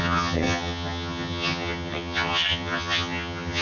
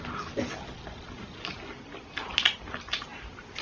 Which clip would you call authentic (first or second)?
second